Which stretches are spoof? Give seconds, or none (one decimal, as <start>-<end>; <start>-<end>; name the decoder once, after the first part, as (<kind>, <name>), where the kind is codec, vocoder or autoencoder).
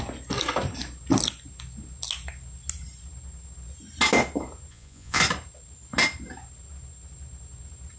4.7-5.2 (vocoder, Vocos)